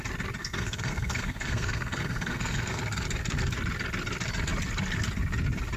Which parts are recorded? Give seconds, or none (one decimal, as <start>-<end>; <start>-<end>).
0.0-0.4; 2.8-5.8